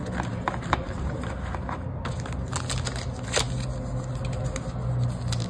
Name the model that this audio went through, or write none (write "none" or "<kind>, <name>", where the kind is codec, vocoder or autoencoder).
none